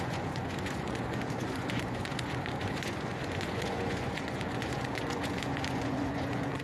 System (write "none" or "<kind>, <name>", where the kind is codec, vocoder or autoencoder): vocoder, Vocos